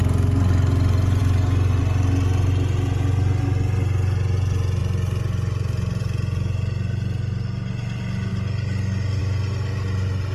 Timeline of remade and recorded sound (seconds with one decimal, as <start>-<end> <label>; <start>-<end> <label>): 0.0-10.3 recorded

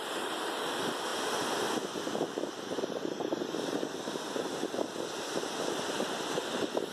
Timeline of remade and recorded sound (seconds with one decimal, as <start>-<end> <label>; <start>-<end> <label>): 0.0-6.9 recorded

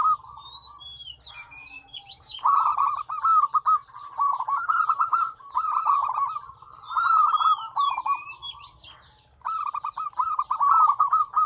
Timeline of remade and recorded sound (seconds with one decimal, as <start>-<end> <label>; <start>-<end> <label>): 0.0-1.3 recorded; 1.3-2.7 remade; 2.7-4.7 recorded; 4.7-6.0 remade; 6.0-11.0 recorded; 11.0-11.5 remade

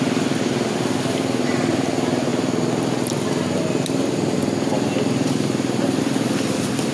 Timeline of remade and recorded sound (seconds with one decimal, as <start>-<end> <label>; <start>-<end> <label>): 0.0-6.9 recorded